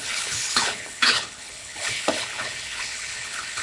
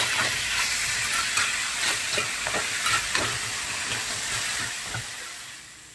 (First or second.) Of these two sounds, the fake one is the first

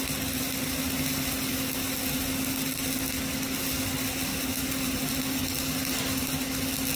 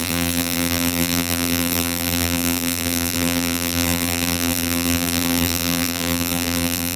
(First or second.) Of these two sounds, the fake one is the second